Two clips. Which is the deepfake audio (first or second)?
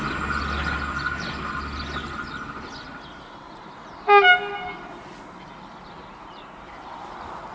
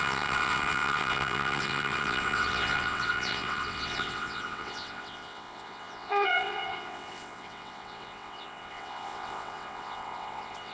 second